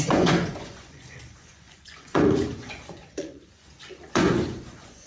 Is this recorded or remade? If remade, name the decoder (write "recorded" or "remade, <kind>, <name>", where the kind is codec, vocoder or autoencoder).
remade, vocoder, Vocos